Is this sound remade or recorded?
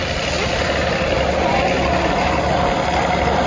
recorded